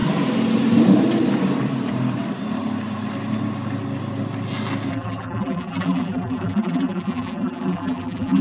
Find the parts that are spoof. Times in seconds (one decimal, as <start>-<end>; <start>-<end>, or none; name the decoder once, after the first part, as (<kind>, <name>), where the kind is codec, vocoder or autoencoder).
4.9-8.4 (vocoder, BigVGAN v2)

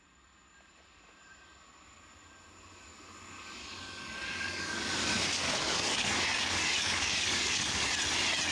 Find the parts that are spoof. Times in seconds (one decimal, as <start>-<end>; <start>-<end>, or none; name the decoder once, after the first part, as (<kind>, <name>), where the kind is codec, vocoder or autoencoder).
3.6-7.9 (codec, DAC)

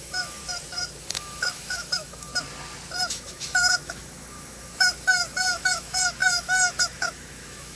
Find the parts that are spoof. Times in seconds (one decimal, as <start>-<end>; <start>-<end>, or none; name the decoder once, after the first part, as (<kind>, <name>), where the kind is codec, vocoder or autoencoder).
0.0-0.4 (autoencoder, DAC-VAE); 1.0-2.3; 3.1-7.8